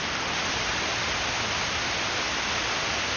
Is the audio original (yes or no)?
yes